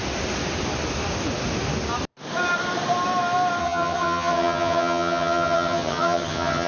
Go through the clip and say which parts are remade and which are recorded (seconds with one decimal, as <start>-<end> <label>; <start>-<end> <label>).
0.0-3.6 recorded; 3.6-6.7 remade